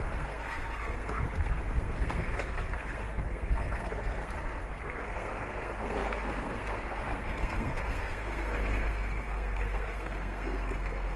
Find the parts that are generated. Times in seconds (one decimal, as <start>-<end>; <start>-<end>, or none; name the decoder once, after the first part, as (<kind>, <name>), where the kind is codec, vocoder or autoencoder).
0.0-11.2 (codec, SNAC)